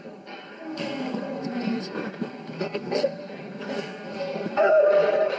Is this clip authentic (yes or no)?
no